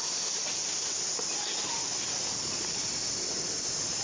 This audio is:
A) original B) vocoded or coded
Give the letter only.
A